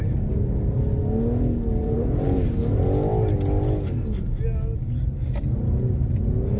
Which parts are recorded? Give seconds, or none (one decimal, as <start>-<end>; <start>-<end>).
0.0-1.8; 2.6-6.6